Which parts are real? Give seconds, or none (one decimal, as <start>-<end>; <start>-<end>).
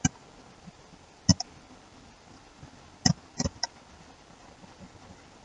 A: 0.0-5.4